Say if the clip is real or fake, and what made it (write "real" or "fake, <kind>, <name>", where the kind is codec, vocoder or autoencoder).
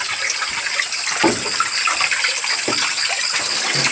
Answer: real